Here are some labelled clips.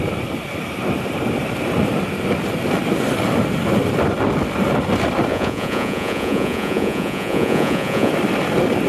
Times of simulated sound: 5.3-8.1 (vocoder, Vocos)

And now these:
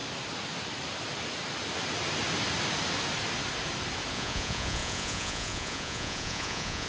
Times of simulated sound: 4.1-6.9 (vocoder, Vocos)